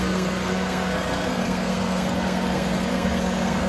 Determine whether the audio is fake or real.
fake